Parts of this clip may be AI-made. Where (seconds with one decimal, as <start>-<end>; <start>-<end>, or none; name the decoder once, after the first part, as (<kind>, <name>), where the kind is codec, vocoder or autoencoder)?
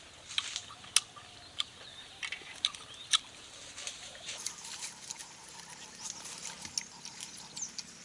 1.9-4.5 (vocoder, BigVGAN v2)